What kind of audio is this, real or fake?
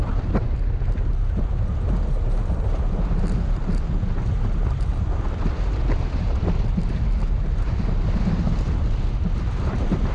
real